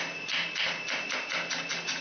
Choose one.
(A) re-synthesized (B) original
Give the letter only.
B